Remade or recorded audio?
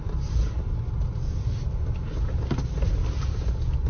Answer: recorded